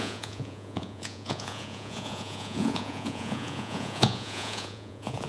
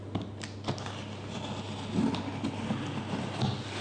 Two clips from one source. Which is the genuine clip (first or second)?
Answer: second